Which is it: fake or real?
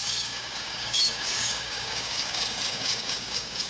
fake